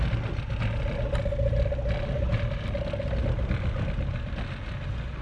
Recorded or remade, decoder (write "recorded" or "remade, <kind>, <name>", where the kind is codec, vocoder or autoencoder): recorded